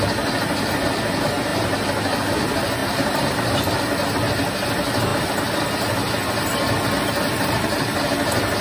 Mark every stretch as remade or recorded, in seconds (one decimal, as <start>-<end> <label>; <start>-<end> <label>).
0.0-2.8 recorded; 2.8-3.6 remade; 3.6-8.6 recorded